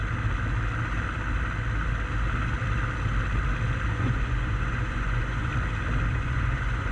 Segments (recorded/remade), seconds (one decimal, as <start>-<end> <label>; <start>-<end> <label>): 0.0-3.9 recorded; 3.9-5.5 remade; 5.5-6.1 recorded; 6.1-6.9 remade